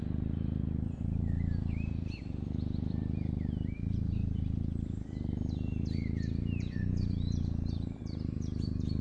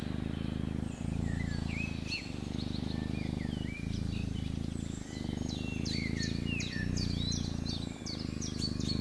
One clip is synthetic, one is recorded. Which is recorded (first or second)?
second